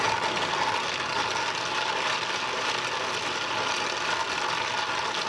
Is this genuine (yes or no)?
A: yes